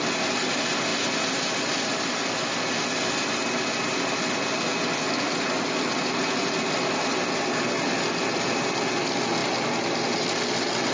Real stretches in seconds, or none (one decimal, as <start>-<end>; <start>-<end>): 0.0-4.7; 7.5-10.9